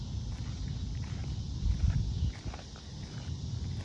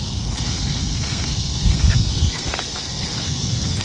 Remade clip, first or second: second